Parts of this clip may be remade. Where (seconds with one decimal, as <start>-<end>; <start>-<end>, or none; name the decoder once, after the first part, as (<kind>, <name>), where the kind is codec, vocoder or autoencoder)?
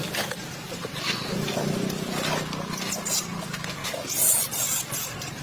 none